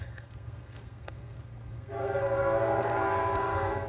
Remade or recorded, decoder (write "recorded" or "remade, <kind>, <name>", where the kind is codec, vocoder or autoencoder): remade, codec, SNAC